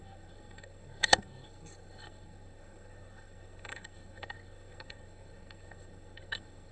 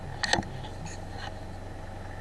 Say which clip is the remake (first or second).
first